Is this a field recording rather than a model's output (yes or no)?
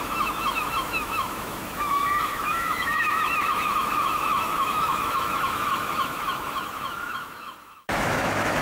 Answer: no